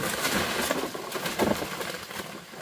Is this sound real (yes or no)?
yes